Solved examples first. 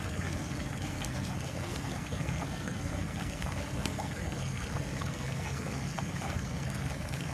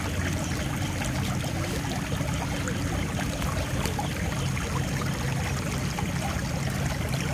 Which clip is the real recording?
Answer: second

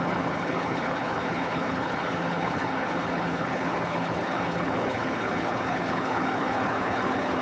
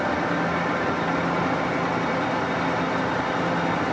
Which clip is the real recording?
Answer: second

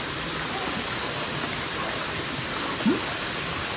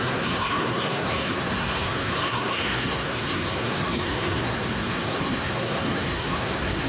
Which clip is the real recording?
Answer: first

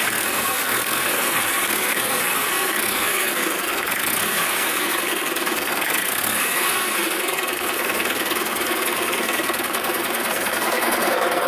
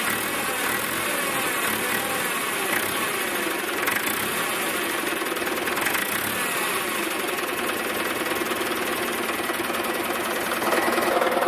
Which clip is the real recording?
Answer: second